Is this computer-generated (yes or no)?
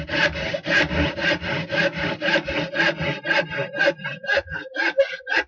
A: no